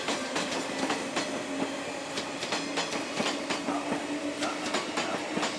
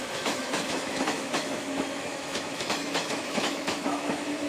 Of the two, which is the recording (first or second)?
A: first